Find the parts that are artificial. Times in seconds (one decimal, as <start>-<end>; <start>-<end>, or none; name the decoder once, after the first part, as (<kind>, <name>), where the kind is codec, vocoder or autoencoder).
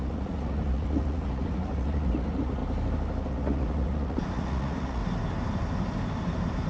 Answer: 0.0-2.6 (vocoder, Vocos); 3.3-5.0